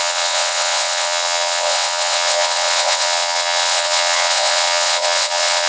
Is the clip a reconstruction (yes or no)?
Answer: yes